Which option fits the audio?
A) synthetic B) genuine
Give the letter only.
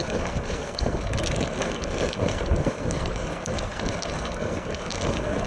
A